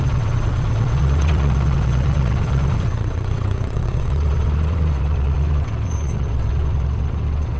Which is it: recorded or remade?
remade